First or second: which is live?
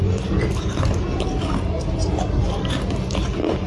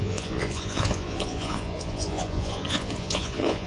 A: first